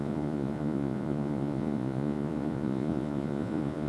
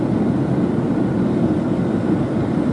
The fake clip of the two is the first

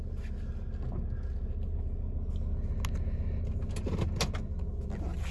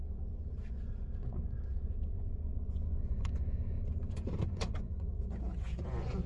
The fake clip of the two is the second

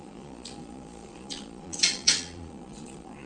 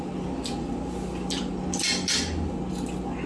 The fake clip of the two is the first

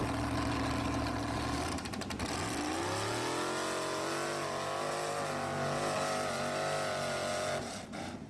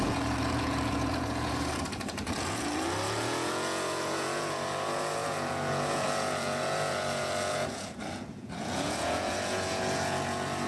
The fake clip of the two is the second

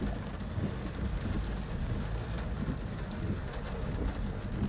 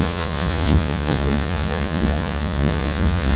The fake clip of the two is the second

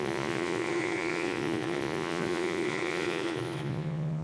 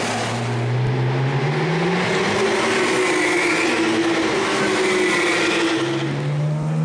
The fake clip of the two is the first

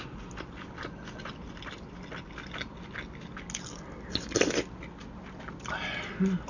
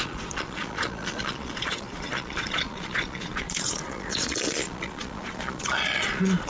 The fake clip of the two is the second